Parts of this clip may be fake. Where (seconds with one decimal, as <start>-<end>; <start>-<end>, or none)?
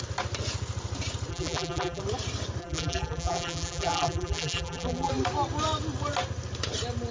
1.3-2.0; 2.6-5.1